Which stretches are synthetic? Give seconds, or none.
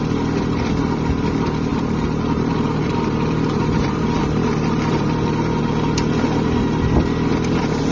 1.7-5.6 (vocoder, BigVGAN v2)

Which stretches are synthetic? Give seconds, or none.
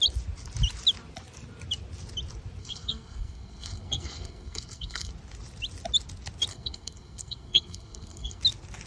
2.6-5.1 (codec, SNAC); 6.5-8.4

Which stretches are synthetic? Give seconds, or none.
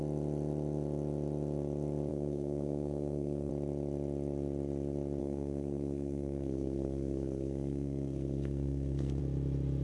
2.1-3.5 (codec, SNAC); 5.2-9.2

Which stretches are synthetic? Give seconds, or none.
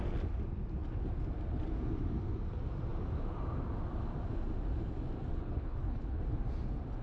5.3-6.2 (codec, HILCodec)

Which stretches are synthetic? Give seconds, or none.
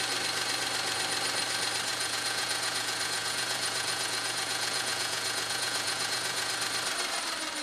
1.9-6.5 (vocoder, Vocos)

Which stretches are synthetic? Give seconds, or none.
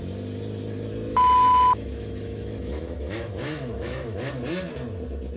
1.1-4.3 (autoencoder, DAC-VAE)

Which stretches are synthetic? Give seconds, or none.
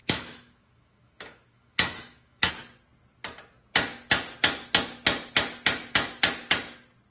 0.0-2.5 (autoencoder, DAC-VAE)